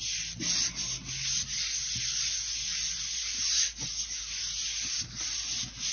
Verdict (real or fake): real